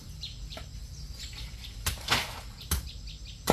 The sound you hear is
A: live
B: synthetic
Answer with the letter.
A